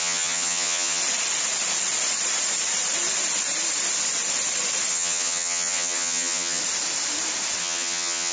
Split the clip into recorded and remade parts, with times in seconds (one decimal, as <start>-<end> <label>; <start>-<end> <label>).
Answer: 0.0-1.0 remade; 1.0-4.9 recorded; 4.9-6.6 remade; 6.6-7.6 recorded; 7.6-8.3 remade